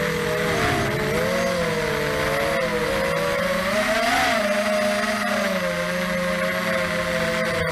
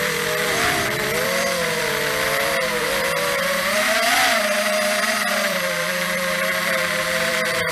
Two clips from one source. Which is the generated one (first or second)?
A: second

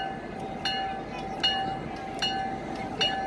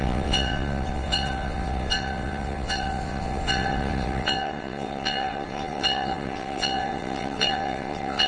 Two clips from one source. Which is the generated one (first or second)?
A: second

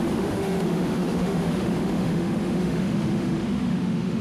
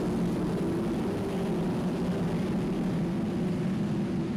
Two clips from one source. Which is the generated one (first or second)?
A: first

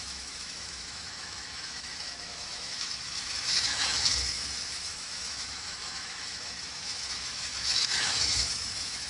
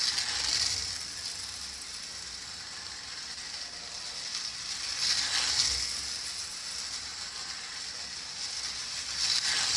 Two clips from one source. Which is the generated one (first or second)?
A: first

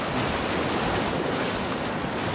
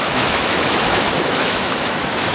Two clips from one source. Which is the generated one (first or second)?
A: second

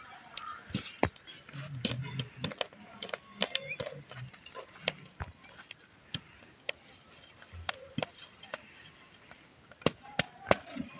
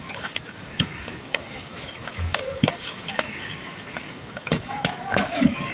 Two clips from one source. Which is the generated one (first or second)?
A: second